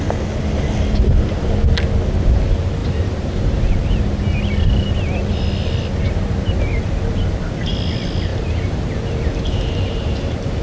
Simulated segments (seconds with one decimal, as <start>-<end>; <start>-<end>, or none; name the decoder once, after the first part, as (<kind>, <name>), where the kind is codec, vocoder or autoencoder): 2.8-4.2 (vocoder, BigVGAN v2); 8.3-10.6